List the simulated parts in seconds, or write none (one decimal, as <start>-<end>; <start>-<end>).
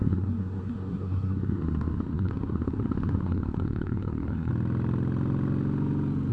0.0-4.5